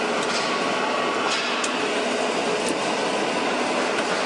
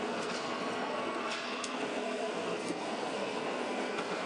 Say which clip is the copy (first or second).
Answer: second